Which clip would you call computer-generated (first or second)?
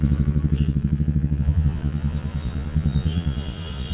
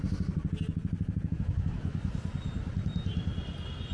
first